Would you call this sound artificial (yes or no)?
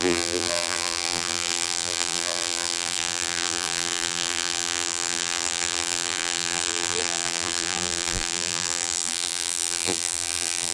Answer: yes